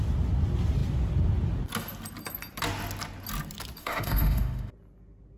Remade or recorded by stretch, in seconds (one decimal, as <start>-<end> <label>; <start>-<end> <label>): 0.0-3.8 recorded; 3.8-4.7 remade; 4.7-5.4 recorded